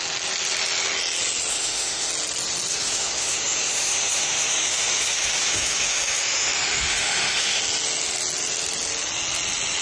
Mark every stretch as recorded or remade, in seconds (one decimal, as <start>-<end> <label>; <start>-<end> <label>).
0.0-1.5 recorded; 1.5-2.1 remade; 2.1-2.7 recorded; 2.7-7.6 remade; 7.6-9.8 recorded